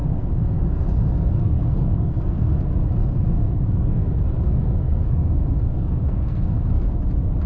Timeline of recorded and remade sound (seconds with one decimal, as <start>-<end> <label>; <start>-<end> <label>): 0.0-2.6 remade; 2.6-3.0 recorded; 3.0-7.0 remade; 7.0-7.5 recorded